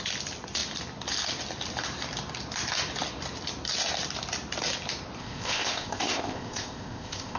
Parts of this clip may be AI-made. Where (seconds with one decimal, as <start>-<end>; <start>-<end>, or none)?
5.2-7.4